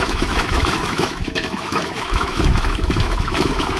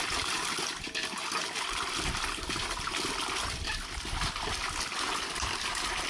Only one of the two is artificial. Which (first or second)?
first